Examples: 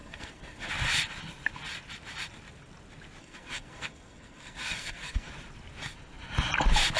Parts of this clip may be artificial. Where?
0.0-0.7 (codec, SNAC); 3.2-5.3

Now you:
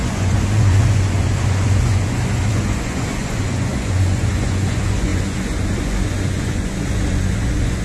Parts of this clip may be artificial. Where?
0.0-7.8 (vocoder, Vocos)

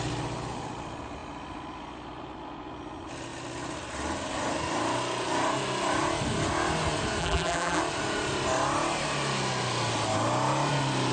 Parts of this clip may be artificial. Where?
7.2-7.8 (vocoder, BigVGAN v2)

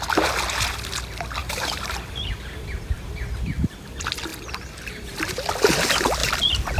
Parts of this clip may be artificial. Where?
1.4-3.3 (vocoder, BigVGAN v2)

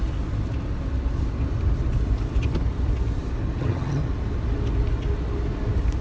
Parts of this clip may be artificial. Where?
3.6-4.0 (vocoder, HiFi-GAN)